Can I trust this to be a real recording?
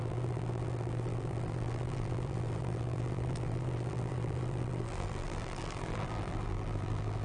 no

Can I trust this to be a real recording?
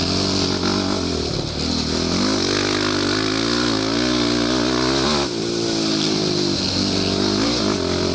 yes